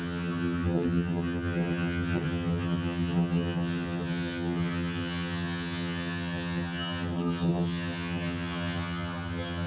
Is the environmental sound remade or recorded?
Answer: remade